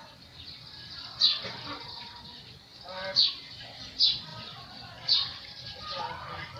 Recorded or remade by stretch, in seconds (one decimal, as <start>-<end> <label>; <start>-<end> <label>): 0.0-2.7 recorded; 2.7-3.3 remade; 3.3-4.3 recorded; 4.3-6.0 remade; 6.0-6.6 recorded